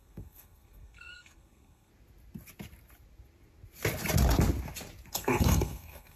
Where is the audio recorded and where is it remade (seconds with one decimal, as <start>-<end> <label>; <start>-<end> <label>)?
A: 0.0-1.9 remade; 1.9-5.1 recorded; 5.1-6.2 remade